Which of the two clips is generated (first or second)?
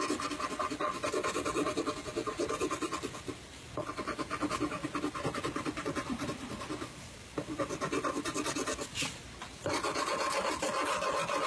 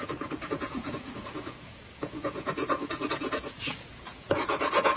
second